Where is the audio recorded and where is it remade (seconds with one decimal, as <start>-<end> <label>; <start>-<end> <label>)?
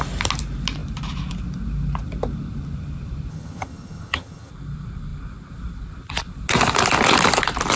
0.0-3.3 recorded; 3.3-4.5 remade; 4.5-7.8 recorded